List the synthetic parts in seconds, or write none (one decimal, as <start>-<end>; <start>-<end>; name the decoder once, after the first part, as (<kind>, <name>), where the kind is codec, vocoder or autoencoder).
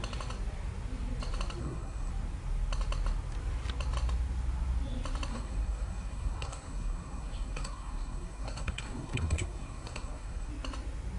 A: 1.6-2.1 (codec, SNAC); 5.3-10.5